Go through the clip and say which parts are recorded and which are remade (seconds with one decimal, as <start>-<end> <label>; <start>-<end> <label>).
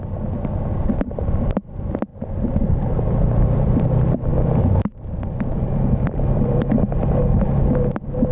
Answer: 0.0-6.7 remade; 6.7-8.3 recorded